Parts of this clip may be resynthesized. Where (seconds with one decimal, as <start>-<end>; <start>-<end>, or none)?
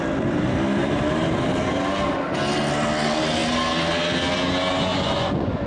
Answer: 4.9-5.7